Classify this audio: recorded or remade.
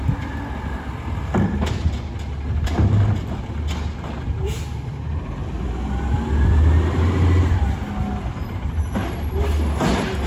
recorded